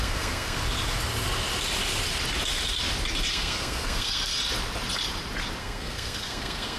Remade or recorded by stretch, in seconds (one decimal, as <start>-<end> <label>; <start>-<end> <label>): 0.0-0.6 remade; 0.6-3.3 recorded; 3.3-4.3 remade; 4.3-5.6 recorded; 5.6-6.8 remade